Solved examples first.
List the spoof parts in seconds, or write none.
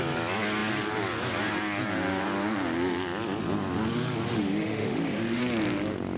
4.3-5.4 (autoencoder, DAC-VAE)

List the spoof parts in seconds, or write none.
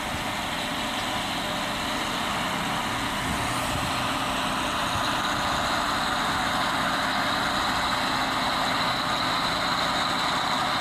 none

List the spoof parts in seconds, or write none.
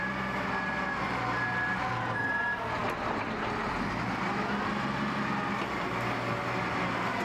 none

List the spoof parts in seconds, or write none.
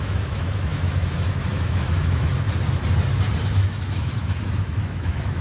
0.0-2.3 (autoencoder, DAC-VAE); 3.5-5.4